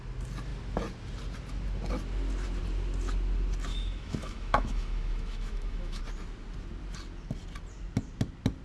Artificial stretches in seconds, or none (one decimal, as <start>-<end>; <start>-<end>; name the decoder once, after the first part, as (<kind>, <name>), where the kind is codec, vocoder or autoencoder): 3.7-6.0 (autoencoder, DAC-VAE)

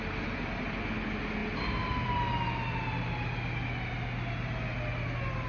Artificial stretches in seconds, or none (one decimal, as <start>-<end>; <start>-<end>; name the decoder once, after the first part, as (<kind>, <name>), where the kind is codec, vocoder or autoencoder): none

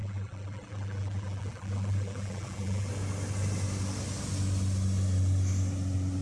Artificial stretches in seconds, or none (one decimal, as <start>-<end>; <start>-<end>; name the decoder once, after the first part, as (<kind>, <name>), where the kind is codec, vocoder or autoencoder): 0.0-2.9 (vocoder, BigVGAN v2)

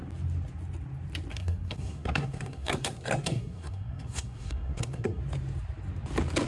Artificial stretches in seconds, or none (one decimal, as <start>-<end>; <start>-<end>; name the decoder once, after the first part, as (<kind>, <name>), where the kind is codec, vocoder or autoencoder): 1.3-5.2 (codec, SNAC)